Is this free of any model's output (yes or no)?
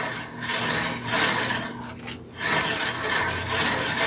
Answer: yes